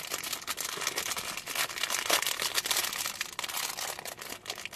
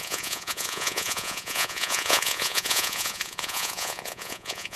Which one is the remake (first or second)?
second